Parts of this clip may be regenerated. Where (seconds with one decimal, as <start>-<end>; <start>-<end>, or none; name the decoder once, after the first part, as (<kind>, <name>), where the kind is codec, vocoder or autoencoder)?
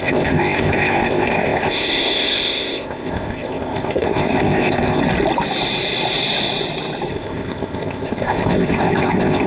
0.0-5.0 (codec, ZipCodec); 7.1-9.5